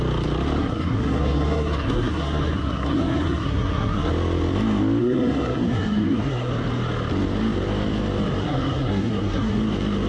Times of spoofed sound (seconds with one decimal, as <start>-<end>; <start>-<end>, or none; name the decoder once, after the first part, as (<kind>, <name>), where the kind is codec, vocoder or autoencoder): 0.6-4.1 (codec, SNAC); 5.0-6.5; 8.4-9.6

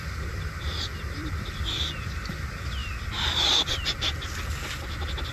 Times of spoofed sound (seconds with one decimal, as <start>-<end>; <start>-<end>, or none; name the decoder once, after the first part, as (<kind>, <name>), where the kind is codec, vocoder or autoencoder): none

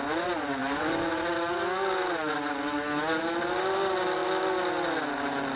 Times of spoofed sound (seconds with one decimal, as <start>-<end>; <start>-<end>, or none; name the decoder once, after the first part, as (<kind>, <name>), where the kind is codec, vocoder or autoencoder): none

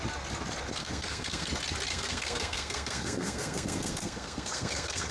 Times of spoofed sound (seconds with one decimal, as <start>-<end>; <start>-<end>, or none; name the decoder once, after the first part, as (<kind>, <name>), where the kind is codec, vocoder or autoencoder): 0.8-1.5 (codec, SNAC); 1.9-5.1

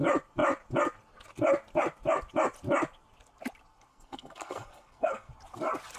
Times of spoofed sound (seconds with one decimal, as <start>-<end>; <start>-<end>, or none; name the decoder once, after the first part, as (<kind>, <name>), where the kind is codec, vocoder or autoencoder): 3.9-5.3 (codec, SNAC)

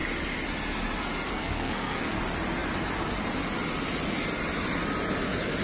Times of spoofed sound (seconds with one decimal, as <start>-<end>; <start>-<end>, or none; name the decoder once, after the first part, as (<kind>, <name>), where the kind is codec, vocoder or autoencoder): 1.3-2.2 (codec, SNAC)